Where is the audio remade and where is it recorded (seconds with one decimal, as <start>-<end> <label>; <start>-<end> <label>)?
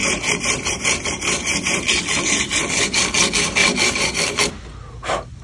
0.0-3.1 remade; 3.1-3.6 recorded; 3.6-4.5 remade; 4.5-5.4 recorded